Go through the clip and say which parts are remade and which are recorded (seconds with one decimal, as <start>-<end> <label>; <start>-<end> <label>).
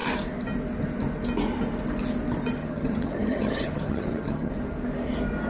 0.0-2.6 recorded; 2.6-4.5 remade; 4.5-5.5 recorded